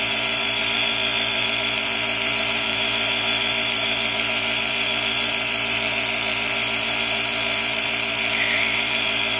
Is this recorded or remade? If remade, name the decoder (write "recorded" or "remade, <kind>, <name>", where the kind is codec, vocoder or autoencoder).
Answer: remade, vocoder, BigVGAN v2